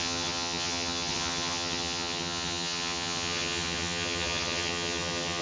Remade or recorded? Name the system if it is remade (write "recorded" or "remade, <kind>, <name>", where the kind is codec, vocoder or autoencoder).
remade, vocoder, HiFi-GAN